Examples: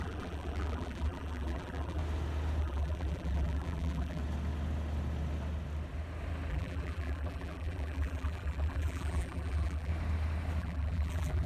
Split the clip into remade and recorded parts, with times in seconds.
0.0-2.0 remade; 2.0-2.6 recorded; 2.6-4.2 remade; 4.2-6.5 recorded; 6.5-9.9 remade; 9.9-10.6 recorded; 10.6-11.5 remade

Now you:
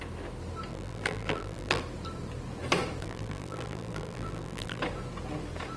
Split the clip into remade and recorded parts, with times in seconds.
0.0-0.7 recorded; 0.7-1.8 remade; 1.8-3.0 recorded; 3.0-4.8 remade; 4.8-5.8 recorded

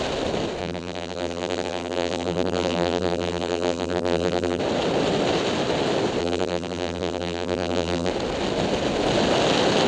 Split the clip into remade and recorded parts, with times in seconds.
0.0-0.6 recorded; 0.6-4.6 remade; 4.6-6.2 recorded; 6.2-8.1 remade; 8.1-9.9 recorded

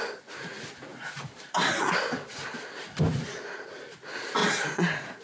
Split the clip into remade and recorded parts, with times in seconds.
0.0-0.9 recorded; 0.9-1.7 remade; 1.7-4.4 recorded; 4.4-5.2 remade

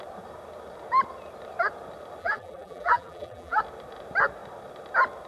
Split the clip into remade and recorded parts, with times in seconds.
0.0-2.2 recorded; 2.2-3.6 remade; 3.6-5.3 recorded

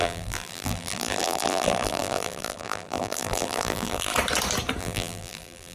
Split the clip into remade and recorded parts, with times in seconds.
0.0-4.1 remade; 4.1-4.8 recorded; 4.8-5.7 remade

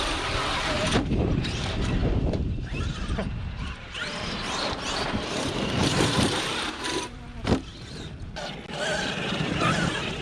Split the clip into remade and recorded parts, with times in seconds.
0.0-7.7 remade; 7.7-9.2 recorded; 9.2-10.2 remade